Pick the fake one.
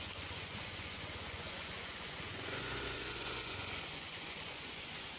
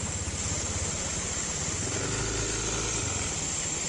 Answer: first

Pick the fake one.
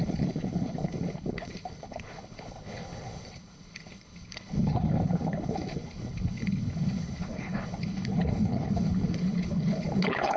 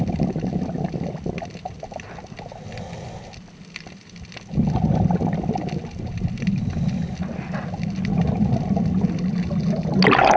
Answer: first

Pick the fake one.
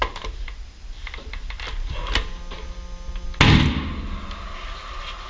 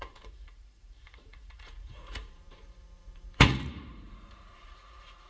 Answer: second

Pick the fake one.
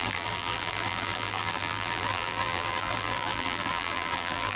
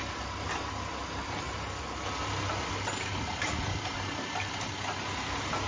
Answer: first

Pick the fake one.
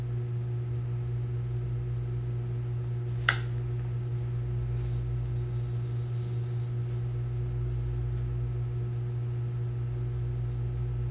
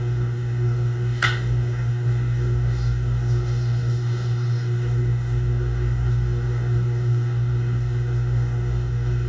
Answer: second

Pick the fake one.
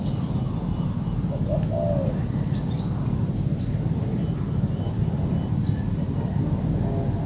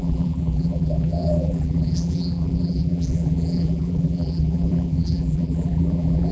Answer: second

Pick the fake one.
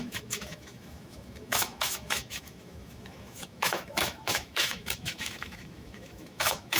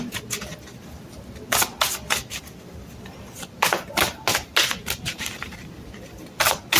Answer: first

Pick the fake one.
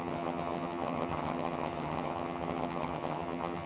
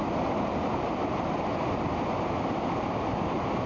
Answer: first